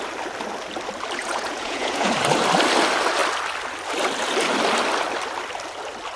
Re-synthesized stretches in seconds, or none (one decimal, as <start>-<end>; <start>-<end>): 1.2-2.1